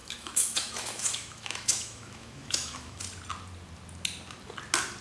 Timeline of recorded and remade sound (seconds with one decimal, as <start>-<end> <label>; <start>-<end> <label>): 0.0-3.0 remade; 3.0-5.0 recorded